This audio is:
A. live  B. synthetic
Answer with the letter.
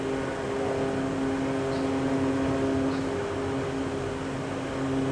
A